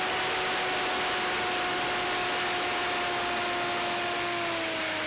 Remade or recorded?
recorded